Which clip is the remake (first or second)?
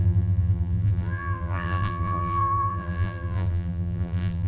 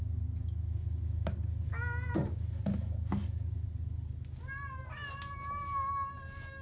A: first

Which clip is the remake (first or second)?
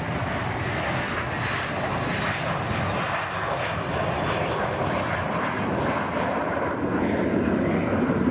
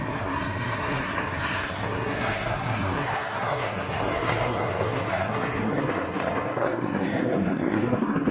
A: second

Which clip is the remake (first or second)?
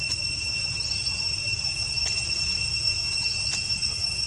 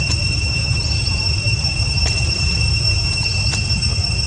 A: second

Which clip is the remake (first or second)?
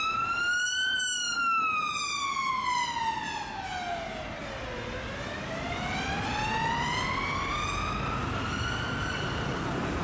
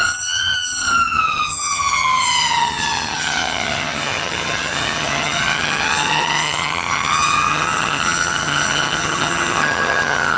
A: second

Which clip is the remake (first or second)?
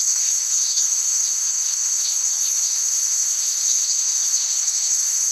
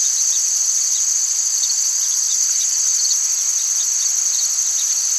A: first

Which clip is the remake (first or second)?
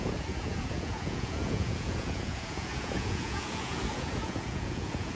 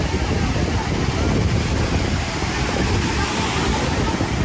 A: first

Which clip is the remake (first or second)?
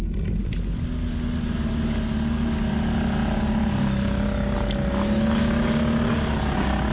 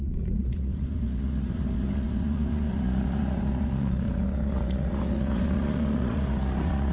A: second